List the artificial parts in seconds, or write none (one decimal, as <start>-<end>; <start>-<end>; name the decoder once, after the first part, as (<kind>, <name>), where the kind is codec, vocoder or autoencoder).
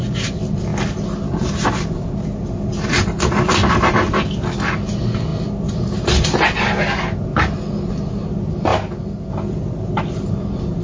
none